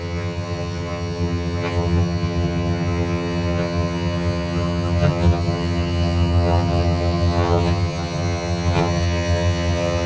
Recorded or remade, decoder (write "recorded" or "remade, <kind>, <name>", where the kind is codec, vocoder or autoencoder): remade, vocoder, HiFi-GAN